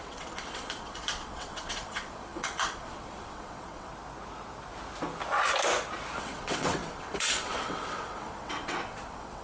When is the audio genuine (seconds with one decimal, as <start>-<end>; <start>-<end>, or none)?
3.9-6.2